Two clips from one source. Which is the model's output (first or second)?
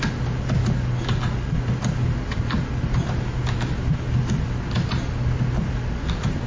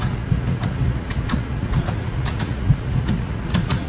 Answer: second